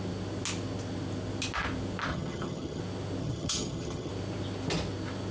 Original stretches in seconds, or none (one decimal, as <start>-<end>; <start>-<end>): 0.0-2.1; 2.8-3.2; 4.1-5.3